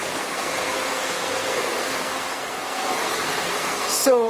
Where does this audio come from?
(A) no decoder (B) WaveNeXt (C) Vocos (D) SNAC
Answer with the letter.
D